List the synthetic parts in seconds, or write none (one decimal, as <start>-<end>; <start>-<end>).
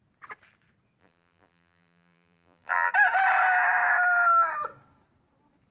1.0-2.9